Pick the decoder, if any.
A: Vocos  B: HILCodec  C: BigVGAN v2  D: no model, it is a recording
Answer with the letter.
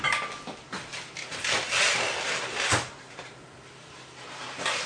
C